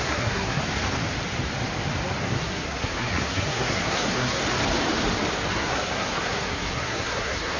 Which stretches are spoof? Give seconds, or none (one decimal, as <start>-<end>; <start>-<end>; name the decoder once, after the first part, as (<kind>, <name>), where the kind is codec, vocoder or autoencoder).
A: 0.0-0.6 (codec, SNAC); 2.2-4.4; 5.5-7.6